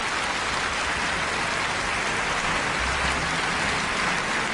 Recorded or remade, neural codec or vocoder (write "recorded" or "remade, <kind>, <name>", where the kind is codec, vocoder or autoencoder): recorded